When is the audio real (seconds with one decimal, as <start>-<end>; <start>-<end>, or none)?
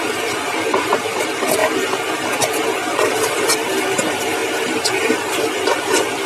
1.6-2.7